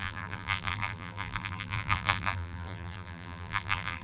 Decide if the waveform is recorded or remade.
remade